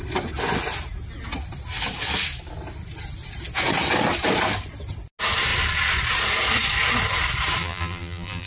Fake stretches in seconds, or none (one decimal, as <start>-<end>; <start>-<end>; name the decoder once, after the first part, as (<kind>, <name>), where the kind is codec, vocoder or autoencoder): 7.6-8.5 (vocoder, BigVGAN v2)